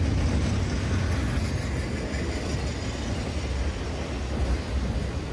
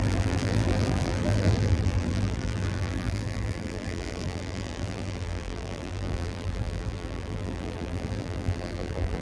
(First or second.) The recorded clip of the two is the first